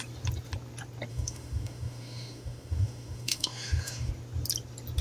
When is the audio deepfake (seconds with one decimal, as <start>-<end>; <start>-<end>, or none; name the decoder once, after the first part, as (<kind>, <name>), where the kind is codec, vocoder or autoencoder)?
1.1-4.1 (autoencoder, DAC-VAE)